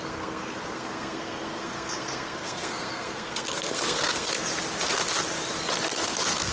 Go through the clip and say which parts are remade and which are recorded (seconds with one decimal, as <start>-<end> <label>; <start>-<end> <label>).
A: 0.0-4.3 remade; 4.3-6.0 recorded; 6.0-6.5 remade